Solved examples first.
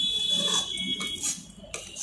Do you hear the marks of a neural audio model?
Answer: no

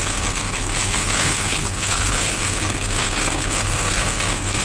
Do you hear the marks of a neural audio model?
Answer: yes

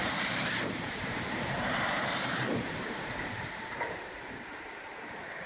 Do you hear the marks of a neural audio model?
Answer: yes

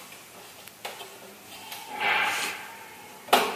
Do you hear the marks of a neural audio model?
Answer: no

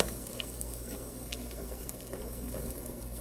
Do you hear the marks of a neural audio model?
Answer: yes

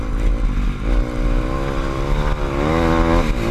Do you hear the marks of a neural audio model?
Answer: no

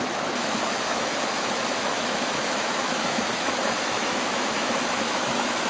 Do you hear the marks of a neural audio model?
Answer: yes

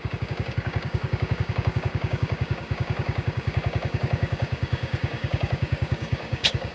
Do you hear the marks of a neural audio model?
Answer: yes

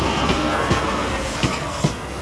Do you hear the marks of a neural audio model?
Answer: yes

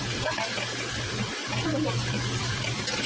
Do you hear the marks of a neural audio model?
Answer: no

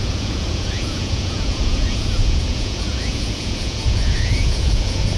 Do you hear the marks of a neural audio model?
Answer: yes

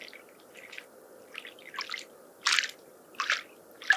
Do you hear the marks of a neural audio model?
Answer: no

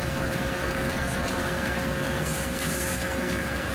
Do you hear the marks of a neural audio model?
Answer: yes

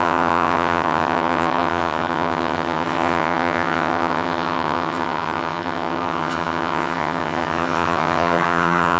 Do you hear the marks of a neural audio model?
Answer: yes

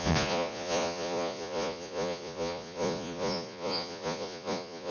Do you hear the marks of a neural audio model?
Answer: yes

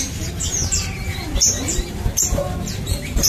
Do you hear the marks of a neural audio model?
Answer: yes